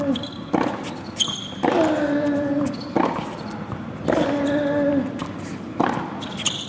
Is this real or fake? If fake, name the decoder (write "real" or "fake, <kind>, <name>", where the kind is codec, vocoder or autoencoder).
real